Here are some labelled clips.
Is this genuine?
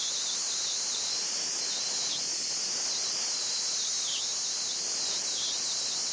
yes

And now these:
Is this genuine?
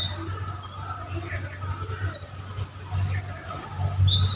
yes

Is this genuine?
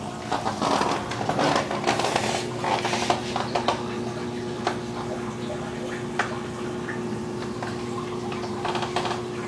yes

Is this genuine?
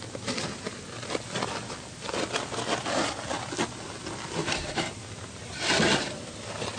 yes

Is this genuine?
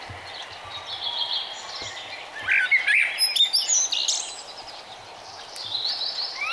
yes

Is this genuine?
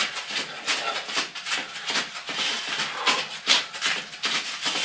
yes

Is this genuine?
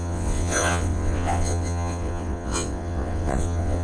no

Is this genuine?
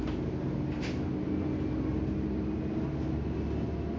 yes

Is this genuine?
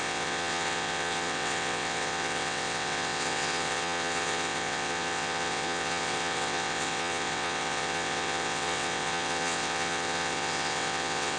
no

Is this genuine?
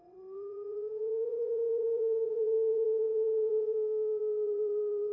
no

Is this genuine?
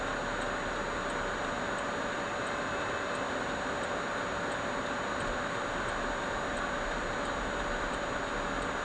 yes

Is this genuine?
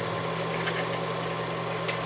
yes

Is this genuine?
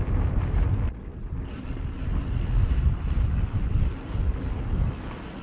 yes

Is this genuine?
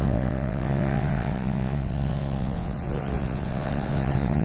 no